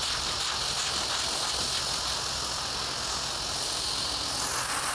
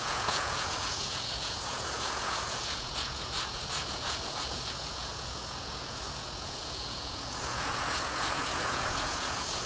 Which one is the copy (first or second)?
second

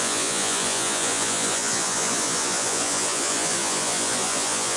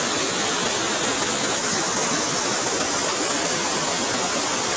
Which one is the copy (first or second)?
first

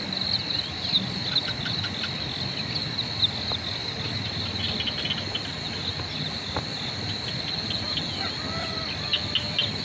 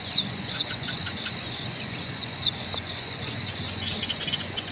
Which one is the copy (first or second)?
second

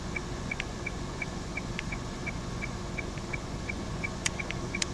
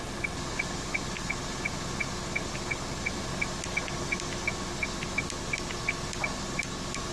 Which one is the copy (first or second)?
first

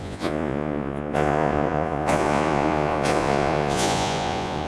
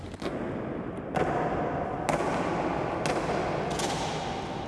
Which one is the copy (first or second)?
first